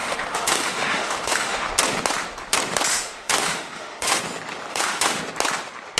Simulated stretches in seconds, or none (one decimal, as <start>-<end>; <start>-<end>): 0.0-1.7; 2.9-4.2; 4.7-5.2